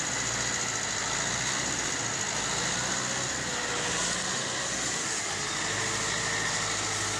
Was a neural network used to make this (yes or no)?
no